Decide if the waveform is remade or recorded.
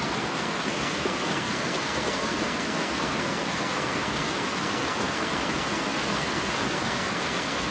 remade